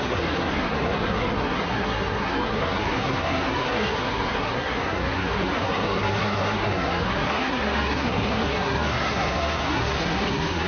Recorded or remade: remade